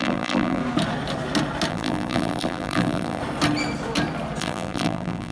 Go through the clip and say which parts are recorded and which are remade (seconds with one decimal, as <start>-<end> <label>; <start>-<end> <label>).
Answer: 0.0-0.6 remade; 0.6-1.7 recorded; 1.7-3.2 remade; 3.2-4.4 recorded; 4.4-5.3 remade